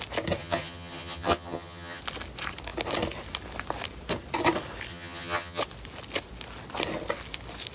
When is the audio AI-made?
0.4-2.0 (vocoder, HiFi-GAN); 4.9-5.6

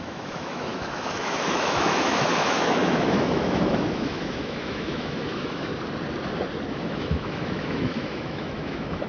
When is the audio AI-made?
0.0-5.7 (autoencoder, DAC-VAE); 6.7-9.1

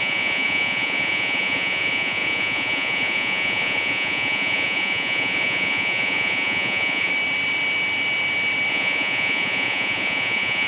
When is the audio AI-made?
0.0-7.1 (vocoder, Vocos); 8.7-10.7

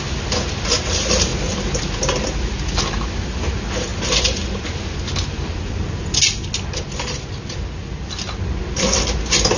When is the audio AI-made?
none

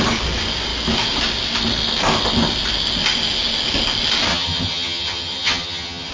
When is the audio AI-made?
4.3-6.1 (vocoder, HiFi-GAN)

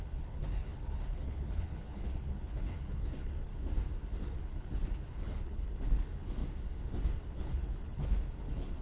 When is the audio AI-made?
0.0-3.5 (codec, HILCodec); 4.2-6.4; 7.2-8.8

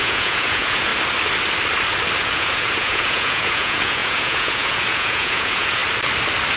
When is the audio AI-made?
0.0-0.9 (vocoder, Vocos); 2.2-5.8